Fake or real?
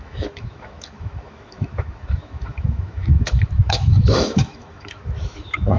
fake